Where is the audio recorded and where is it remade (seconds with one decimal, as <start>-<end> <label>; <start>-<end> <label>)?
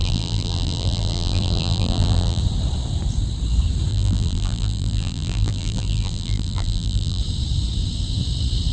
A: 0.0-2.4 remade; 2.4-3.9 recorded; 3.9-7.2 remade; 7.2-8.7 recorded